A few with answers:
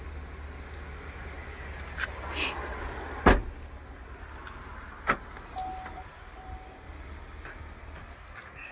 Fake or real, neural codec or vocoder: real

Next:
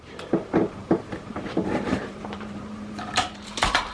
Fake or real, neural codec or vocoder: fake, vocoder, BigVGAN v2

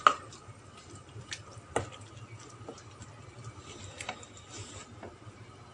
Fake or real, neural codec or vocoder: real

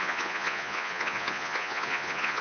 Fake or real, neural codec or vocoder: fake, vocoder, Vocos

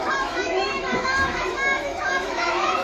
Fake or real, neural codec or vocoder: fake, autoencoder, DAC-VAE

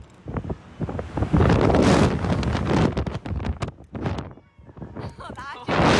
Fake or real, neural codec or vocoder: real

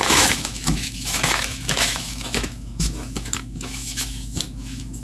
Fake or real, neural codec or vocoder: fake, autoencoder, DAC-VAE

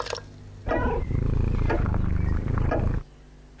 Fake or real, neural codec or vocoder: real